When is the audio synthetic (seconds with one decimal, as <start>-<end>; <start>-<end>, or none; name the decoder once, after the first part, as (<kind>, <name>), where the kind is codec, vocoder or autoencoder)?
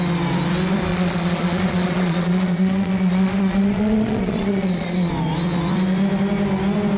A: 0.9-5.1 (vocoder, Vocos)